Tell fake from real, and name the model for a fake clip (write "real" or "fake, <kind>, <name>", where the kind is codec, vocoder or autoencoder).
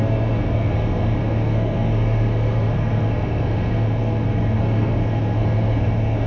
fake, codec, SNAC